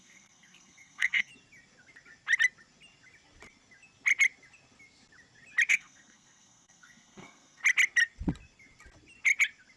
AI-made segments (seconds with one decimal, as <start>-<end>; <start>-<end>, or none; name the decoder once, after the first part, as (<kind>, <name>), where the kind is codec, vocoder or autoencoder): 0.0-1.3 (codec, SNAC); 5.7-7.6